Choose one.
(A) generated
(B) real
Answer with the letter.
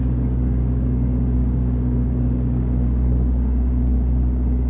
A